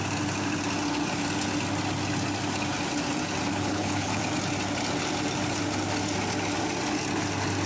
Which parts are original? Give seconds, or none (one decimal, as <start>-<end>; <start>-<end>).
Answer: 0.0-3.5; 4.2-7.7